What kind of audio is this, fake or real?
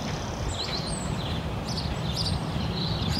fake